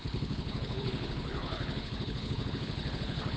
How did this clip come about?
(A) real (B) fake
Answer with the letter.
B